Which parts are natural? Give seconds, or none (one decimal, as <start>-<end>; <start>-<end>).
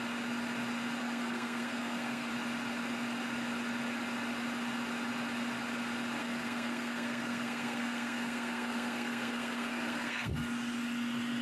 0.0-1.0; 2.3-6.2; 10.3-11.4